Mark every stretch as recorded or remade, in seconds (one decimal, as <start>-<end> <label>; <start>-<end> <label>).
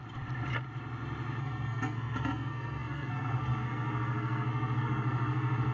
0.0-1.4 recorded; 1.4-5.7 remade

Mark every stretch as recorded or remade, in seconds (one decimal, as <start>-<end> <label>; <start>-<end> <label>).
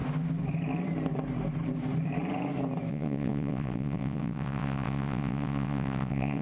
0.0-2.9 recorded; 2.9-6.4 remade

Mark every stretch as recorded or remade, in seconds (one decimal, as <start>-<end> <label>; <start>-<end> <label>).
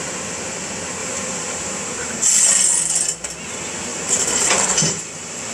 0.0-1.0 recorded; 1.0-2.4 remade; 2.4-3.9 recorded; 3.9-5.0 remade; 5.0-5.5 recorded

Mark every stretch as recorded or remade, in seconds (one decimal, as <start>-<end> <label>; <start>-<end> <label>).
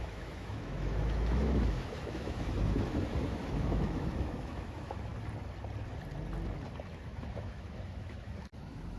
0.0-5.1 remade; 5.1-6.9 recorded; 6.9-9.0 remade